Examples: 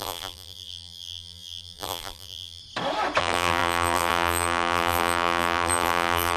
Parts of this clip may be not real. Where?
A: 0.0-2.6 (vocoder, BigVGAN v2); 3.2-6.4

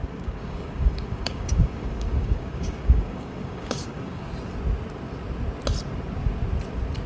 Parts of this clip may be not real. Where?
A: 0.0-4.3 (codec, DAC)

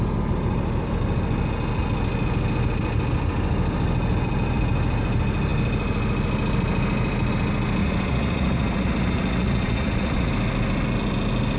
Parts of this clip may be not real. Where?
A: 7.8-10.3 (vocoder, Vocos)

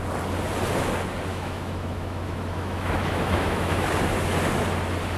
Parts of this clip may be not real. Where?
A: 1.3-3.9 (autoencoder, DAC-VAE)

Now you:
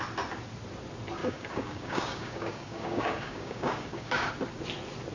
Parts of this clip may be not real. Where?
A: 1.2-4.3 (codec, DAC)